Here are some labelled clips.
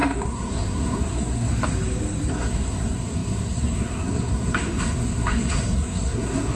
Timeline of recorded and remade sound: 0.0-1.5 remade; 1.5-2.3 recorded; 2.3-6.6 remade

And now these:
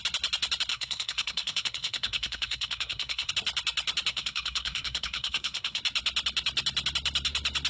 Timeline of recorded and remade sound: 0.0-0.7 recorded; 0.7-3.3 remade; 3.3-4.1 recorded; 4.1-5.8 remade; 5.8-7.7 recorded

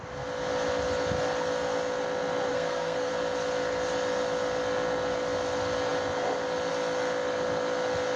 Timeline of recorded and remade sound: 0.0-2.5 recorded; 2.5-3.1 remade; 3.1-8.2 recorded